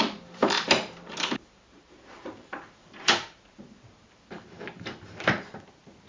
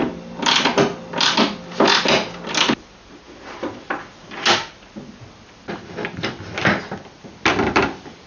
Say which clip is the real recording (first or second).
second